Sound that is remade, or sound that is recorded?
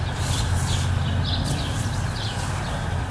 recorded